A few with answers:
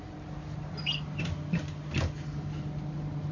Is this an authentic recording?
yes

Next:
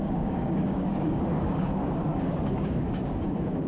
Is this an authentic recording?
no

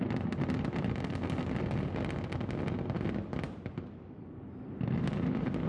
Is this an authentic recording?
yes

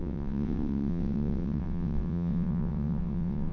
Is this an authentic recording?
no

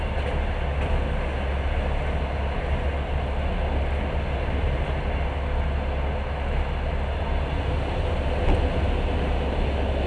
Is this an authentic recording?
yes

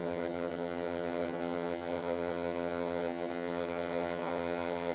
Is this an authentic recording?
no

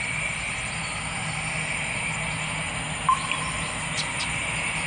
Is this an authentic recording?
yes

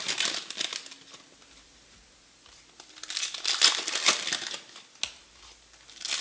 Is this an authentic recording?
yes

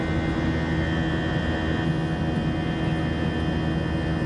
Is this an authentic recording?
yes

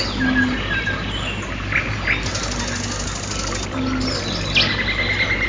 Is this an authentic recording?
yes